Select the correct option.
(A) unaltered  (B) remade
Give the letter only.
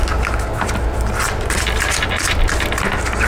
A